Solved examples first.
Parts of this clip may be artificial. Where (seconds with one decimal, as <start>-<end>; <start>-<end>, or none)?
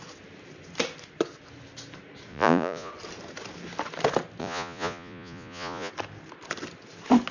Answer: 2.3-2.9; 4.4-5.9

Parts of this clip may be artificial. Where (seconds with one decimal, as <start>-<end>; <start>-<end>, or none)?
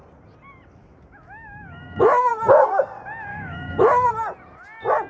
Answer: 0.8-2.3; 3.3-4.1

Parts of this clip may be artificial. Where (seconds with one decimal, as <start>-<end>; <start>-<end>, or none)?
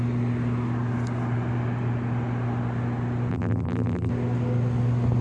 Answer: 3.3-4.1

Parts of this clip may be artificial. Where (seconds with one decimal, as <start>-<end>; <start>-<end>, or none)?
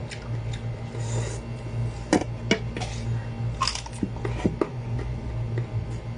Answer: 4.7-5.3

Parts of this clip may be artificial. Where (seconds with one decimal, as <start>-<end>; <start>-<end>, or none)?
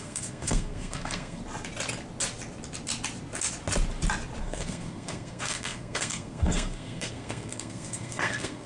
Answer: 0.0-1.4; 4.4-8.7